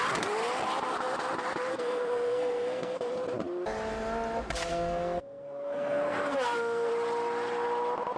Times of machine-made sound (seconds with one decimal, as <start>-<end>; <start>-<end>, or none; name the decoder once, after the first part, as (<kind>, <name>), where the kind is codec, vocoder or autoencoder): 1.7-3.1 (codec, SNAC); 4.7-6.9

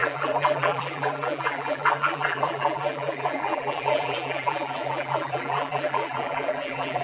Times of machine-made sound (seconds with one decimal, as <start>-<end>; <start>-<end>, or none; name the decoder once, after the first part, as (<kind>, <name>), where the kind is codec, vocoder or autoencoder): 0.0-7.0 (vocoder, BigVGAN v2)